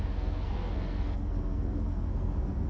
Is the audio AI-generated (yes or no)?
yes